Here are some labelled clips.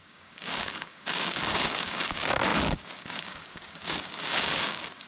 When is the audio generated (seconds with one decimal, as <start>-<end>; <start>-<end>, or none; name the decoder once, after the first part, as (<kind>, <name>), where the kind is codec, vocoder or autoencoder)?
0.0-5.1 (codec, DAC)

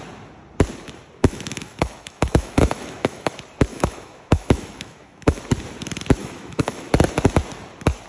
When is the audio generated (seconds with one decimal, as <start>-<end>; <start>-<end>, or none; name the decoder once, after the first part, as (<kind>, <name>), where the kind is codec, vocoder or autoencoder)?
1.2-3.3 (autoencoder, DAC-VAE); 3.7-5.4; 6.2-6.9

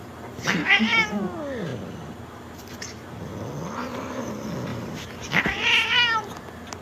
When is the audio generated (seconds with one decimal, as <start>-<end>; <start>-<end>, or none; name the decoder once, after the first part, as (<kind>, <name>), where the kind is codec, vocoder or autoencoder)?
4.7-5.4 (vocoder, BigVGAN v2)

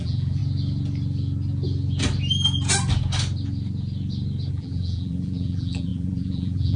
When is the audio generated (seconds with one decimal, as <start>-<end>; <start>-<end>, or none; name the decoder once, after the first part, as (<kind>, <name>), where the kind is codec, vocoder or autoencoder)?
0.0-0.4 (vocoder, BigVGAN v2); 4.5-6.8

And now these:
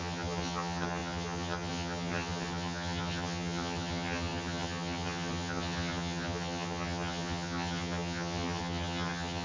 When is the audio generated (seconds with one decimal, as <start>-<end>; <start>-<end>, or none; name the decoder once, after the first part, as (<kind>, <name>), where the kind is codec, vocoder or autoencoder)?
0.0-9.4 (vocoder, HiFi-GAN)

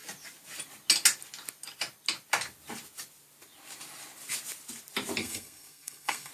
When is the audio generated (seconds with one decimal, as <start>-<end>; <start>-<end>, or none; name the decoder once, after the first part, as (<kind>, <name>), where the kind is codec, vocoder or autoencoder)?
5.2-6.3 (codec, SNAC)

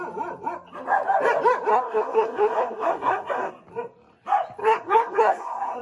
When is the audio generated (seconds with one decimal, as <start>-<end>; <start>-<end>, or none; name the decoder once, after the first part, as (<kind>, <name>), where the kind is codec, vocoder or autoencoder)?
1.7-3.5 (codec, SNAC); 4.6-5.8

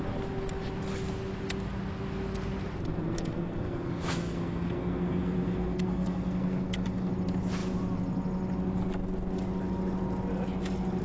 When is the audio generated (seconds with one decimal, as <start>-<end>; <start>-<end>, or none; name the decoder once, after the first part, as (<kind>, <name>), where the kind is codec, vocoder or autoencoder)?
2.9-7.1 (codec, SNAC)